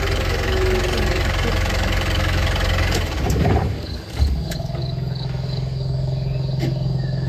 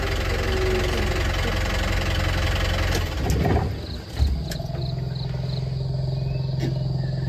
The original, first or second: second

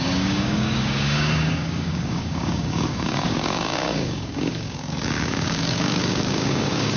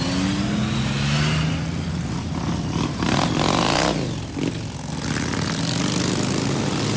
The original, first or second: second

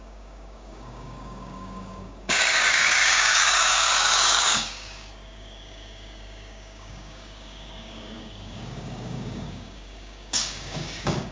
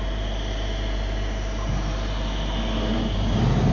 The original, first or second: second